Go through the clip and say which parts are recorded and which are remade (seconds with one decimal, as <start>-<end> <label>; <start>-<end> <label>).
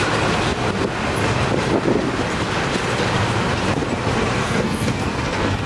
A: 0.0-4.4 recorded; 4.4-5.7 remade